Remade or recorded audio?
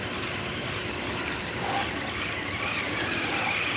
recorded